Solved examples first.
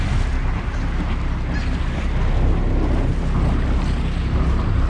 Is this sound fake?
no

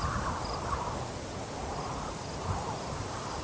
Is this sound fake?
no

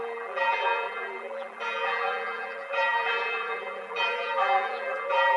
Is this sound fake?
yes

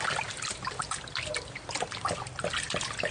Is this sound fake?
no